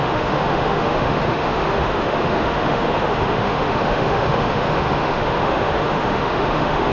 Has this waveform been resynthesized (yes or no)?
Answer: yes